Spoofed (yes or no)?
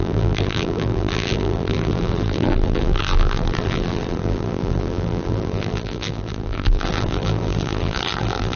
yes